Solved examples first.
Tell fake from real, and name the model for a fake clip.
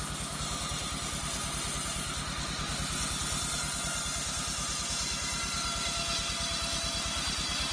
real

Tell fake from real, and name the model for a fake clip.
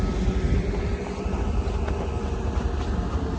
real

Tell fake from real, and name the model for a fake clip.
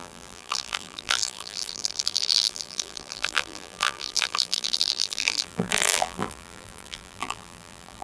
fake, vocoder, BigVGAN v2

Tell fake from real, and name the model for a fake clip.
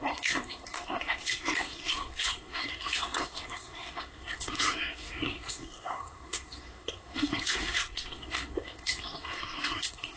fake, codec, SNAC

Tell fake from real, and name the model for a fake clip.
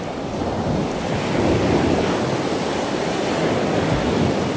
real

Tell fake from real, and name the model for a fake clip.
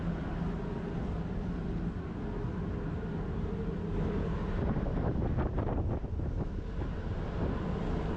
real